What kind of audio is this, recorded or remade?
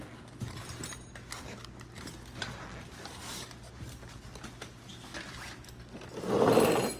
recorded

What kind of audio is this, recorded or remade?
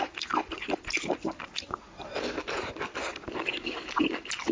recorded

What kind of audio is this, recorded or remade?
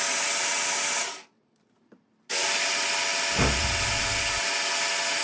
recorded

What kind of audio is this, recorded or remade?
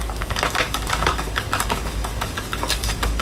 remade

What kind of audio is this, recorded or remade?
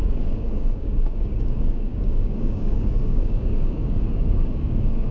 remade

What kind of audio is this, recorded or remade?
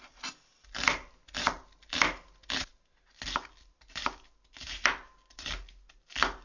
recorded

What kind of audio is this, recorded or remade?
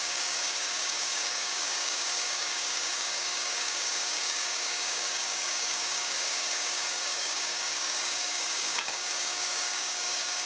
remade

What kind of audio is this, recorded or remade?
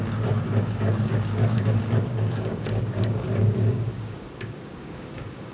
remade